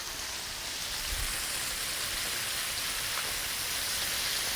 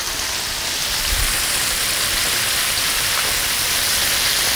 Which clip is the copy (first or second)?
second